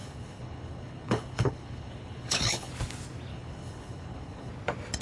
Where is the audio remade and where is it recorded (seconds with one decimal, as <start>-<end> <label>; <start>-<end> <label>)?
0.0-2.7 remade; 2.7-3.3 recorded; 3.3-4.5 remade; 4.5-5.0 recorded